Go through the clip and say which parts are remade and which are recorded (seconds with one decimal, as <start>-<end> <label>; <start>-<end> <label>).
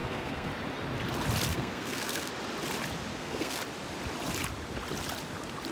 0.0-0.5 remade; 0.5-1.5 recorded; 1.5-2.3 remade; 2.3-3.1 recorded; 3.1-3.6 remade; 3.6-5.7 recorded